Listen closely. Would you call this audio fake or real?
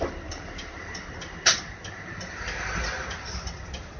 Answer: fake